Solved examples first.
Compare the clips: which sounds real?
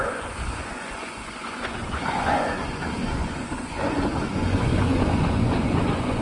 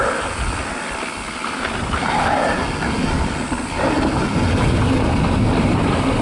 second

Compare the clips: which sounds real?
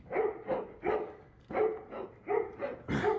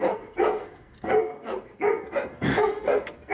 first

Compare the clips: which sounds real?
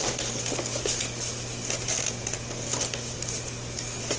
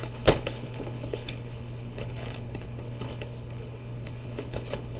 first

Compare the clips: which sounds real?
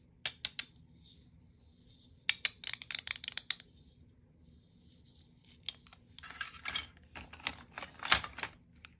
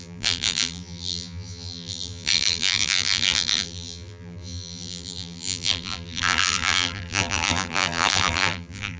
first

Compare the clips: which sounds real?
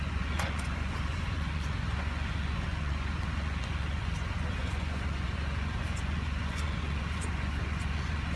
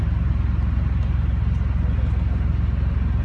second